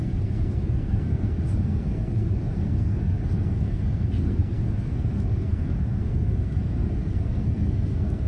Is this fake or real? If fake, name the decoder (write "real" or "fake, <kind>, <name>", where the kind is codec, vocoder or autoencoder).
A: fake, codec, SNAC